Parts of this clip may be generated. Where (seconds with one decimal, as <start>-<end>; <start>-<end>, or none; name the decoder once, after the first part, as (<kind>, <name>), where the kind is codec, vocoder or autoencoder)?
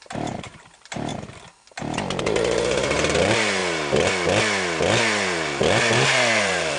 0.0-1.1 (vocoder, BigVGAN v2); 2.2-3.6; 5.0-6.8